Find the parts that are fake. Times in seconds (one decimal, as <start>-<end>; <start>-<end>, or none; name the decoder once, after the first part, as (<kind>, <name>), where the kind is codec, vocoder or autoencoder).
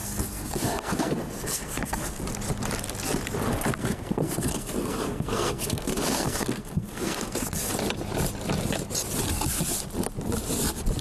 0.0-2.2 (codec, SNAC); 3.5-7.7